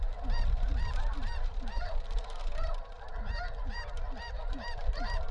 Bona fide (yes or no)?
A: no